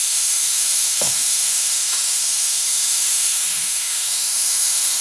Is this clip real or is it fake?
fake